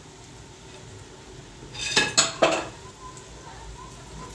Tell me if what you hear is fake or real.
real